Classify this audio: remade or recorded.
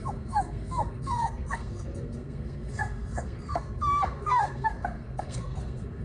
remade